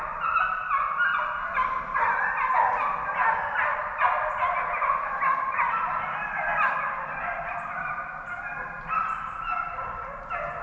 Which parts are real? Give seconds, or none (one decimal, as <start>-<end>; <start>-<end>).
0.0-10.6